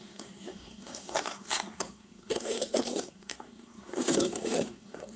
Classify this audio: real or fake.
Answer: fake